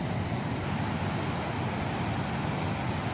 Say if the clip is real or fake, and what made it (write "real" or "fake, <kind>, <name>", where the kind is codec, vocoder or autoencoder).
real